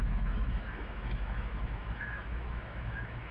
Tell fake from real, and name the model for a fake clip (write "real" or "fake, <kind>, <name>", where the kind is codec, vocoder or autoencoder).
fake, autoencoder, DAC-VAE